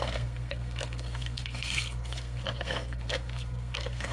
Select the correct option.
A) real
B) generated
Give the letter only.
B